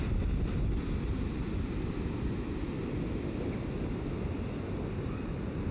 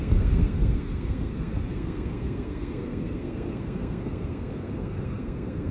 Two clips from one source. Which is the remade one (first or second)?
second